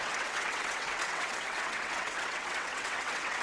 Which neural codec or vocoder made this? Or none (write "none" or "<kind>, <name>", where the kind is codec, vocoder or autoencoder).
vocoder, WaveNeXt